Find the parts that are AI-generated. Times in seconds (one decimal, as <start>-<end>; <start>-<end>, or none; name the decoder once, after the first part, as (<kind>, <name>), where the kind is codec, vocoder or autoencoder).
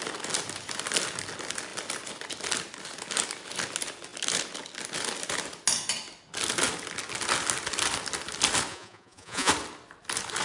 8.7-9.5 (vocoder, Vocos)